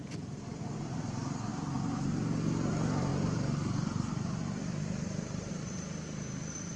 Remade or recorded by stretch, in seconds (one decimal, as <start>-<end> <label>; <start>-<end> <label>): 0.0-1.5 remade; 1.5-2.7 recorded; 2.7-3.1 remade; 3.1-5.5 recorded; 5.5-6.8 remade